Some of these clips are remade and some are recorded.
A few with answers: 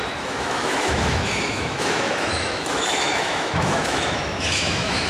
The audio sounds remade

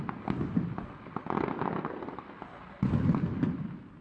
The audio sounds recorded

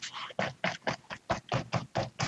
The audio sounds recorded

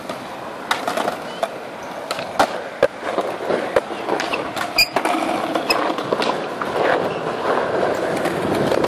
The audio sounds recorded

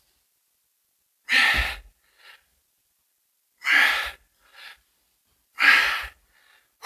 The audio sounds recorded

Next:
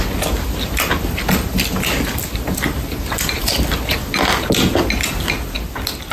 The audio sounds recorded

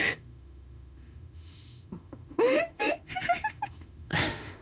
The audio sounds remade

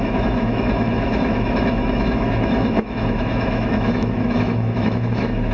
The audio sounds remade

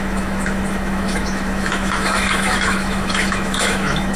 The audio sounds remade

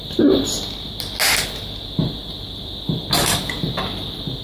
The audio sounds recorded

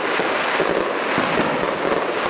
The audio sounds recorded